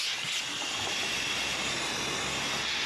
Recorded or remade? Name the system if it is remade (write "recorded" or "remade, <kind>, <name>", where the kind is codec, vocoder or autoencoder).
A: recorded